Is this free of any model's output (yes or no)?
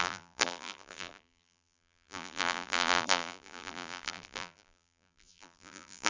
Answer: no